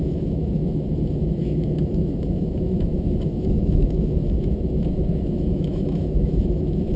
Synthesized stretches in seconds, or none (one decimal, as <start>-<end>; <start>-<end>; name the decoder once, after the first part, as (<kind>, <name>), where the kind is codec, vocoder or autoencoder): 0.0-7.0 (autoencoder, DAC-VAE)